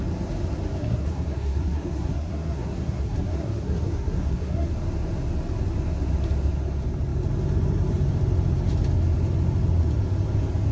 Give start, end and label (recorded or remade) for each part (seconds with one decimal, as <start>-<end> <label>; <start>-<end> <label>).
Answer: 0.0-0.8 recorded; 0.8-4.7 remade; 4.7-10.7 recorded